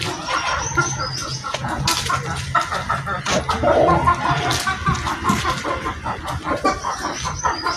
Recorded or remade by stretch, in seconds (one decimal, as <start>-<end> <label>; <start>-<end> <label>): 0.0-1.2 recorded; 1.2-1.8 remade; 1.8-7.8 recorded